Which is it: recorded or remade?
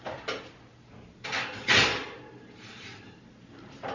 recorded